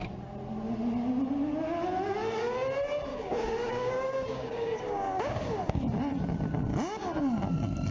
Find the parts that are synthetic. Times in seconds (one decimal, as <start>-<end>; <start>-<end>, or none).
3.1-6.0